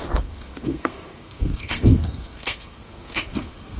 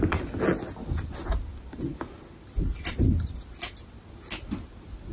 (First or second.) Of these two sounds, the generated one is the first